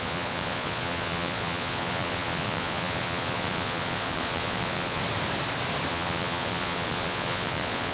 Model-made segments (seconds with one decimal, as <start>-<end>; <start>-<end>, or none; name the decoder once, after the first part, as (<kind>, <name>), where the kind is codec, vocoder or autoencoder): 0.0-5.0 (vocoder, Vocos); 5.9-7.9